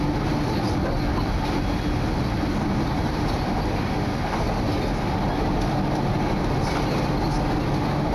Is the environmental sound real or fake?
real